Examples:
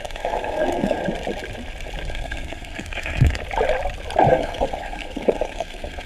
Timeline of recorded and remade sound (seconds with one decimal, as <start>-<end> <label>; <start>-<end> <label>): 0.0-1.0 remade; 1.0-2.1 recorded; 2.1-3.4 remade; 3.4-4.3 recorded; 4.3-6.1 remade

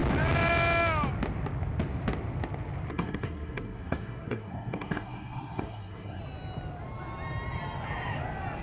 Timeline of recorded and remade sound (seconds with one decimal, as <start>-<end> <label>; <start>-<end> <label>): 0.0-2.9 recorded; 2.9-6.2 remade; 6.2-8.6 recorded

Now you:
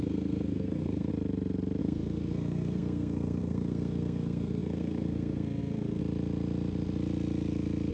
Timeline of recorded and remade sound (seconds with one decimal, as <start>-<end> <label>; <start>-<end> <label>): 0.0-1.1 remade; 1.1-1.8 recorded; 1.8-6.0 remade; 6.0-7.9 recorded

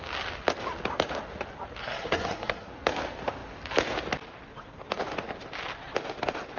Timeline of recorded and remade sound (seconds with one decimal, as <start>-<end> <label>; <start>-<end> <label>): 0.0-1.8 recorded; 1.8-2.7 remade; 2.7-6.6 recorded

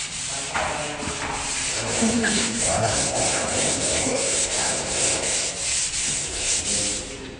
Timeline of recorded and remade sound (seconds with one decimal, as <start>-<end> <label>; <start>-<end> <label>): 0.0-1.7 recorded; 1.7-5.5 remade; 5.5-6.0 recorded; 6.0-6.6 remade; 6.6-7.4 recorded

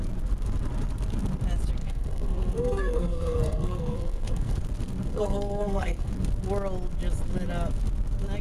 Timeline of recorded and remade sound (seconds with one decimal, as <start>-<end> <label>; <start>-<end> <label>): 0.0-1.8 recorded; 1.8-4.6 remade; 4.6-5.1 recorded; 5.1-6.1 remade; 6.1-8.4 recorded